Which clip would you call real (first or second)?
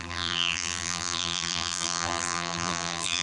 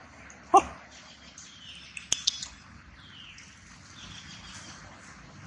second